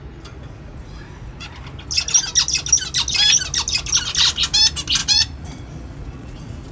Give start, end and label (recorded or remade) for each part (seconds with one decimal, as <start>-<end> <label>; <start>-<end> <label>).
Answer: 0.0-0.7 recorded; 0.7-1.5 remade; 1.5-5.0 recorded; 5.0-6.7 remade